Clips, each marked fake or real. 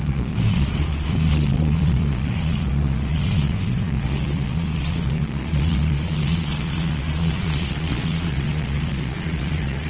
fake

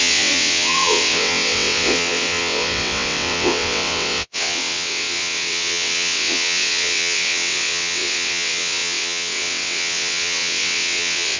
fake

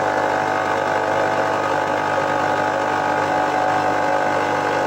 real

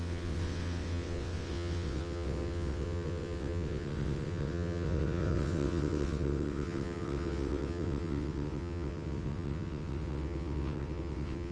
fake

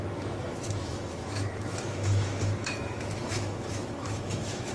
fake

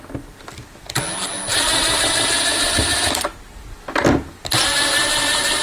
real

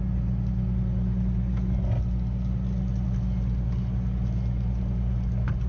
real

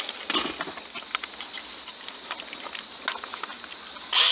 real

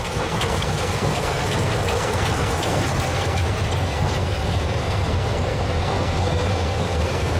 fake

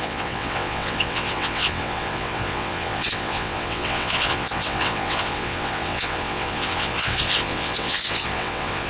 fake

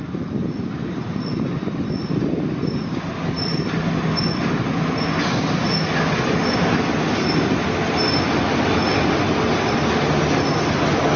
real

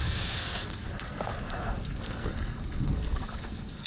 fake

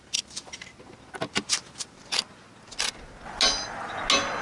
real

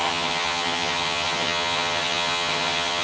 fake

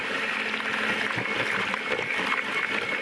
real